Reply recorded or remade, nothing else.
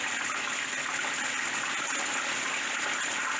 recorded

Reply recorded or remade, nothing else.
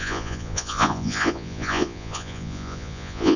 remade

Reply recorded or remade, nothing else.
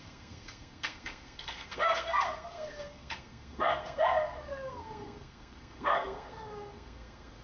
remade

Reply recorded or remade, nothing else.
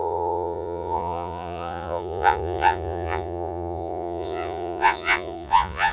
remade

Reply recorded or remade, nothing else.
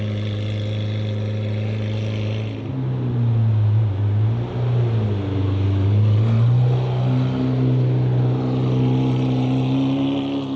recorded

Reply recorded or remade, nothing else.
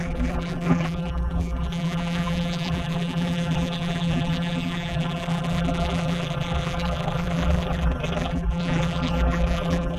remade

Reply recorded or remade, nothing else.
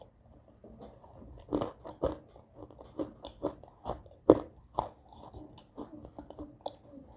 recorded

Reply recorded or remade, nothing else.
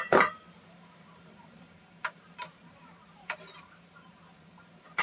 remade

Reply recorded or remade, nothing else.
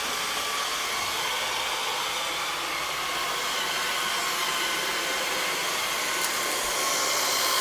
recorded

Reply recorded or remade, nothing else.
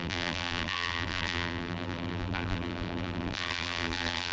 remade